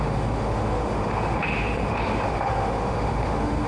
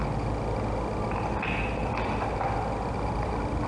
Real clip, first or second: second